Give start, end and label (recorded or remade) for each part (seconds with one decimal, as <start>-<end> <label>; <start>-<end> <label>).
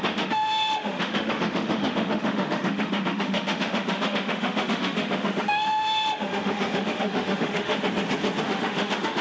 0.0-7.7 remade; 7.7-8.4 recorded; 8.4-9.2 remade